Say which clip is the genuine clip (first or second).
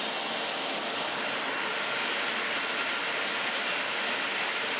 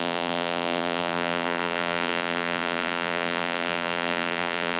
first